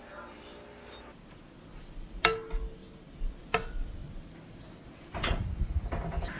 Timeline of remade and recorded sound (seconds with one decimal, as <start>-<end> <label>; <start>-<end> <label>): 0.0-6.4 recorded